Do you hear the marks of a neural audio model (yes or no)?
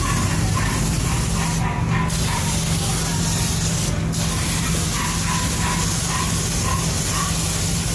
no